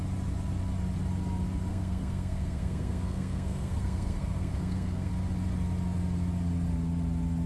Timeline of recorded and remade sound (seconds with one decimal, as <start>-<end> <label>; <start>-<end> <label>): 0.0-1.7 recorded; 1.7-5.1 remade; 5.1-7.5 recorded